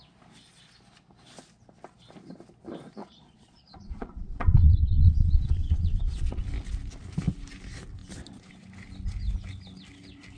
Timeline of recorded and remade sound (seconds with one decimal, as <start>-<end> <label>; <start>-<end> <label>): 0.0-3.0 recorded; 3.0-6.4 remade; 6.4-10.4 recorded